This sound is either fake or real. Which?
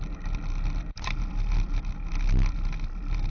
real